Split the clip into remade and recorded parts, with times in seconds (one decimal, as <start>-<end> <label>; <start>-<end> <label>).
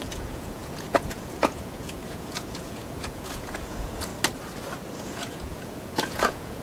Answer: 0.0-4.1 remade; 4.1-5.0 recorded; 5.0-6.6 remade